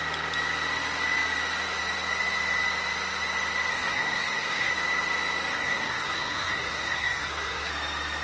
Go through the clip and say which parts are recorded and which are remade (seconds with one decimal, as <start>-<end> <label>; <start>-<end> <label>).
0.0-3.7 recorded; 3.7-4.7 remade; 4.7-5.5 recorded; 5.5-7.7 remade; 7.7-8.2 recorded